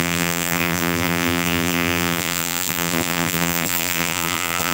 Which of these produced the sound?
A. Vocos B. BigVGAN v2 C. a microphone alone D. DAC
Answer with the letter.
B